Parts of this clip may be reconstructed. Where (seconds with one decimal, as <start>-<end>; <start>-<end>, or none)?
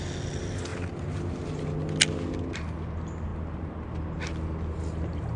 none